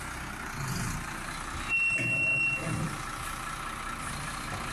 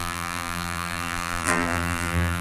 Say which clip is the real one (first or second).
first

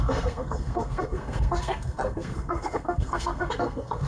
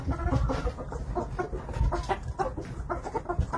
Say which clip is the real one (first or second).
second